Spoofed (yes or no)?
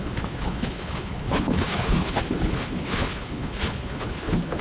yes